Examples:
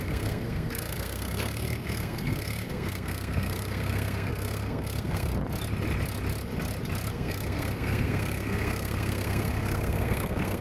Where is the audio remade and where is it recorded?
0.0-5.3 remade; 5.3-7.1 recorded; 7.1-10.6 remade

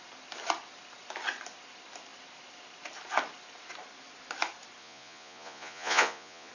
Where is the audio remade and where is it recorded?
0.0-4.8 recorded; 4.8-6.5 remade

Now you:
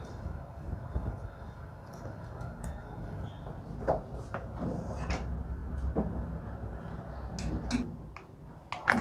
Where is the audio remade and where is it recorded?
0.0-3.3 remade; 3.3-9.0 recorded